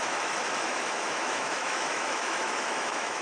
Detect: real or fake fake